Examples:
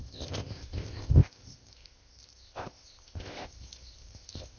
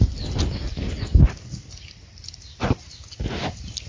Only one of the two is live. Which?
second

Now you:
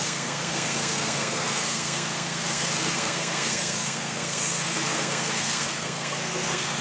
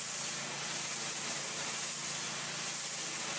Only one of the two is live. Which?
second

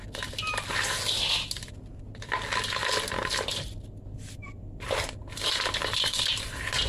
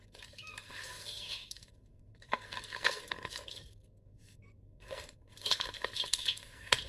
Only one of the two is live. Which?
first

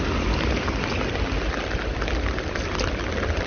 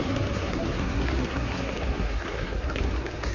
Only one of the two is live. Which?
first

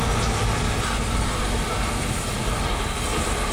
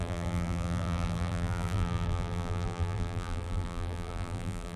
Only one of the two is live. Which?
first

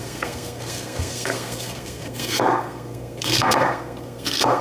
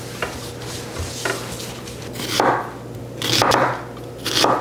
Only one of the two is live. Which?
second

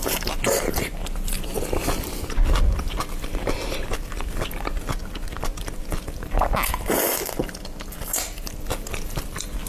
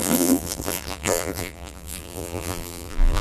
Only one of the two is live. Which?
first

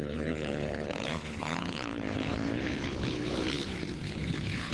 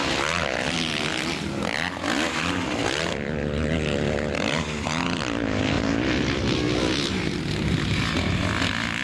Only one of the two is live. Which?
second